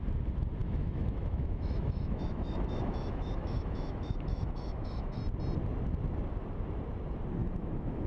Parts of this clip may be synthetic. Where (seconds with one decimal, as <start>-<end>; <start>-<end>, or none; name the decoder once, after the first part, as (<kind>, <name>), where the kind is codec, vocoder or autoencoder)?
0.6-5.2 (autoencoder, DAC-VAE); 7.4-8.1